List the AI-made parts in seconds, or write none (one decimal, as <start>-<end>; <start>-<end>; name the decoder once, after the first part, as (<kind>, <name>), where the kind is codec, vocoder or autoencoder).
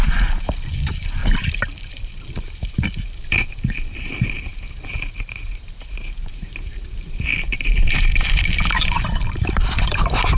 0.0-1.2 (vocoder, BigVGAN v2); 1.9-10.4